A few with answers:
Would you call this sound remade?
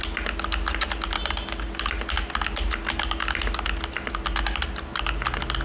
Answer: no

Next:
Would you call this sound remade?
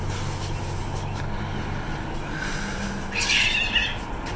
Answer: no